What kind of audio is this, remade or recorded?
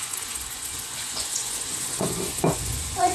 remade